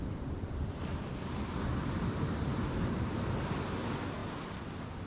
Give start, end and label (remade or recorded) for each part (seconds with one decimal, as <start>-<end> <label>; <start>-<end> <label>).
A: 0.0-1.8 recorded; 1.8-3.5 remade; 3.5-5.1 recorded